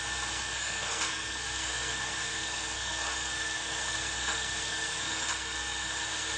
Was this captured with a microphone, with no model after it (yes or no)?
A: no